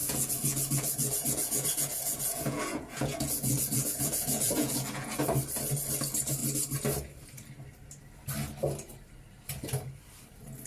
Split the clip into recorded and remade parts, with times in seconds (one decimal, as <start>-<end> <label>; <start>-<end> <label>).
0.0-5.2 remade; 5.2-10.7 recorded